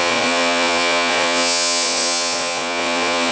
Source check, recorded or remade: remade